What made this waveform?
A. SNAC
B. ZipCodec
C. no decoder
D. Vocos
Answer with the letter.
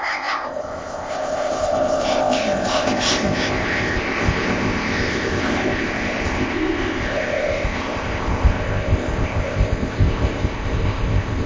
B